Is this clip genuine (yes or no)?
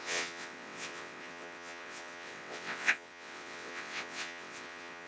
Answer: no